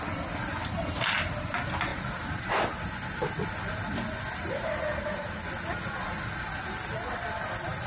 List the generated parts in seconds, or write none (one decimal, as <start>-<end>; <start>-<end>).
none